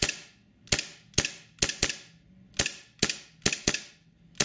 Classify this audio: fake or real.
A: real